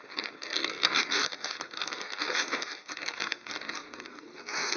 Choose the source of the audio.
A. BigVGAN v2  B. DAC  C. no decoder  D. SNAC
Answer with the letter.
D